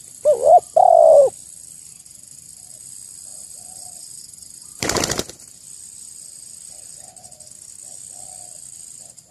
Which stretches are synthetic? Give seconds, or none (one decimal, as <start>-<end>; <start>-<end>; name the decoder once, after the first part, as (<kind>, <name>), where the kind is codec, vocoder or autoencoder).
3.3-7.1 (vocoder, BigVGAN v2)